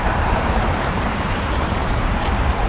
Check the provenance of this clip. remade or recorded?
remade